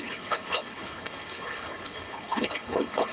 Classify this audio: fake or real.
fake